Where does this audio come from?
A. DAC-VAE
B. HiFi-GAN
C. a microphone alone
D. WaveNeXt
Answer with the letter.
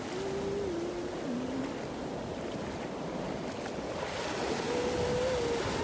C